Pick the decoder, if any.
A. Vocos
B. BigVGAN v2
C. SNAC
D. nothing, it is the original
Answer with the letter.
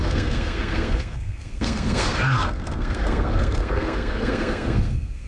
C